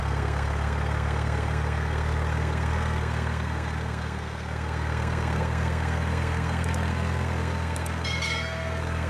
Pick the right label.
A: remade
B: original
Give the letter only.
A